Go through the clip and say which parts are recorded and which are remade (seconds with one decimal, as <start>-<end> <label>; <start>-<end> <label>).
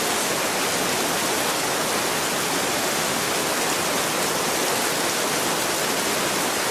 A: 0.0-2.8 recorded; 2.8-3.3 remade; 3.3-6.7 recorded